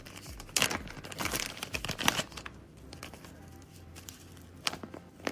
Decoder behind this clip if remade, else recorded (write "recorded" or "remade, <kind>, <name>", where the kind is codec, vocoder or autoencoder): remade, vocoder, BigVGAN v2